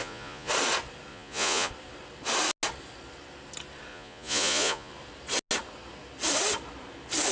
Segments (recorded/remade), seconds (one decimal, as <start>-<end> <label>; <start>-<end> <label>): 0.0-0.5 remade; 0.5-1.1 recorded; 1.1-1.7 remade; 1.7-3.9 recorded; 3.9-4.9 remade; 4.9-7.3 recorded